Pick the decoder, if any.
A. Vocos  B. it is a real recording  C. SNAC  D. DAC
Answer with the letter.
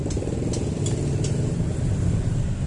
B